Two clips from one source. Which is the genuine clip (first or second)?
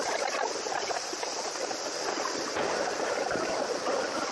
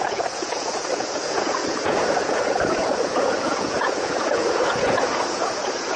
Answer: first